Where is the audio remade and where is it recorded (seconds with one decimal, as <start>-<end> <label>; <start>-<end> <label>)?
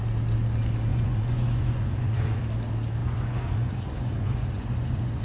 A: 0.0-0.9 recorded; 0.9-2.4 remade; 2.4-3.0 recorded; 3.0-5.2 remade